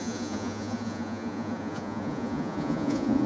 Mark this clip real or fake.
fake